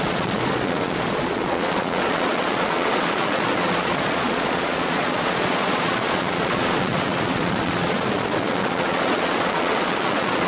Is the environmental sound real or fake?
fake